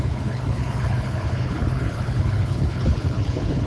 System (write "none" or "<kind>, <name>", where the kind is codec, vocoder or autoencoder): codec, HILCodec